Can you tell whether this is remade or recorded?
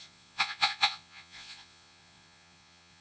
remade